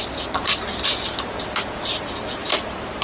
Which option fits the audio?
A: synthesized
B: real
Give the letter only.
B